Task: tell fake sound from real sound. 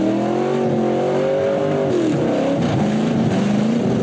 real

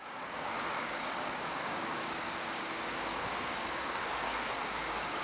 fake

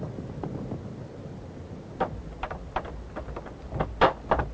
real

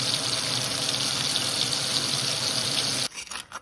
real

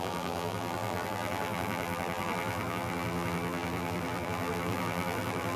fake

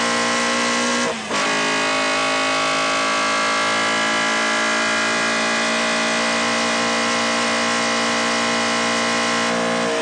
real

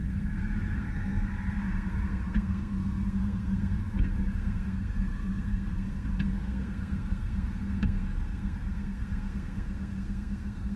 fake